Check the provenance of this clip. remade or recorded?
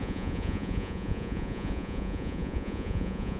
remade